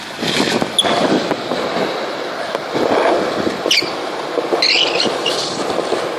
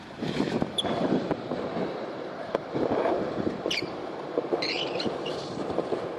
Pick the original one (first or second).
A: first